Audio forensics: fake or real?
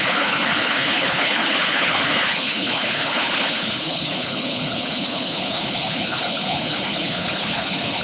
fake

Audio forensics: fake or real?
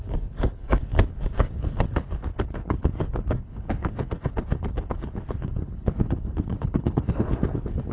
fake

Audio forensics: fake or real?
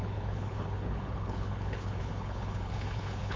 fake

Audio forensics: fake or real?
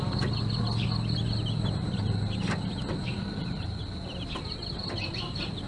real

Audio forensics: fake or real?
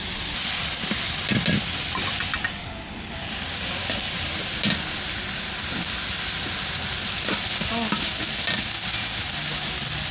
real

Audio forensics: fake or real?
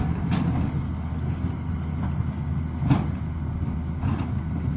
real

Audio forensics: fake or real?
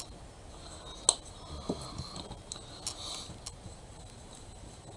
real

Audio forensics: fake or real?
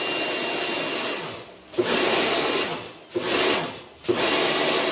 real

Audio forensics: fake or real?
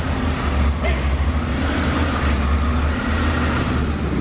real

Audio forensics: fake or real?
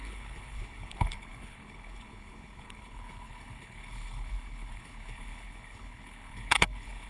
fake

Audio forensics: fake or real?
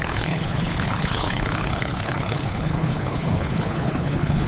fake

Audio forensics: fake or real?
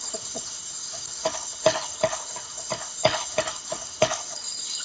fake